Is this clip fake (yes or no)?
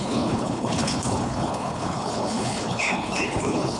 yes